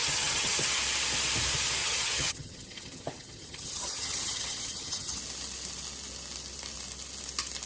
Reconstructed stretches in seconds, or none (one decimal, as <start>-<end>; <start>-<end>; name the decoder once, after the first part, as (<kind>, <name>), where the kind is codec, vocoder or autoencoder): 0.0-0.8 (vocoder, HiFi-GAN); 1.8-5.2